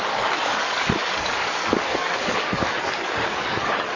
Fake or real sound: fake